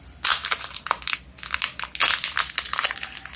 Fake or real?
real